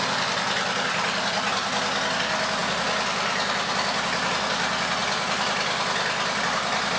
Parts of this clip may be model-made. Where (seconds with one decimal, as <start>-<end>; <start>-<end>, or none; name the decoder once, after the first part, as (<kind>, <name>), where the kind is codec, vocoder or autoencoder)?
none